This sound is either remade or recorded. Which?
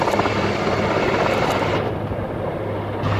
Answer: recorded